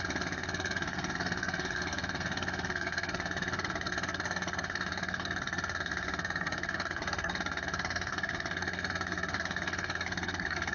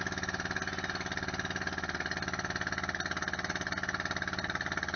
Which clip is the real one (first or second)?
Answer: second